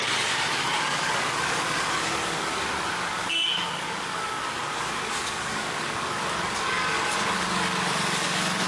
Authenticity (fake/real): fake